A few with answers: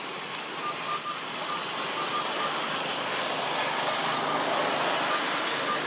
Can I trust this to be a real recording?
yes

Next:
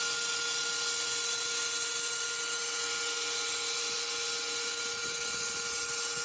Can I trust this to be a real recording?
yes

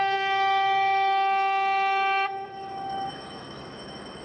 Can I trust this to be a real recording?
no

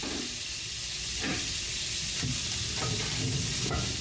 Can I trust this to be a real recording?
yes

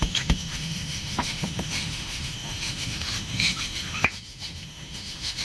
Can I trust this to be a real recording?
no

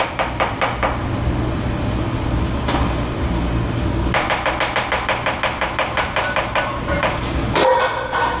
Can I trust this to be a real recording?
yes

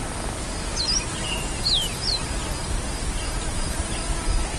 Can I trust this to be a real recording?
yes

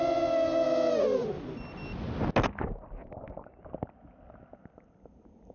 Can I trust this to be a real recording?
yes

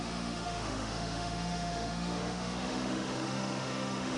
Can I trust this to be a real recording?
no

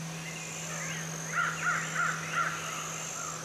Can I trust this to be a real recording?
yes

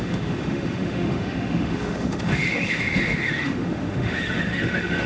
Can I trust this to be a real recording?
no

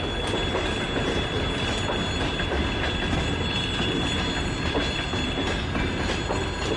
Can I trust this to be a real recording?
yes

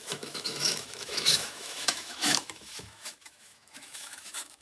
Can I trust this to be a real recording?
no